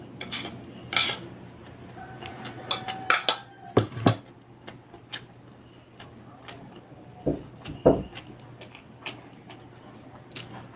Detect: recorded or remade recorded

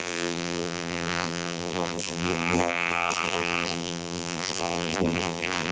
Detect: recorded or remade remade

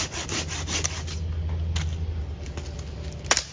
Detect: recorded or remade recorded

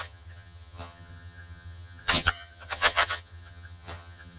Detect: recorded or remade remade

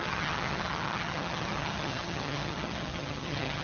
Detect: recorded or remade remade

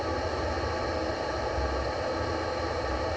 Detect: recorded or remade recorded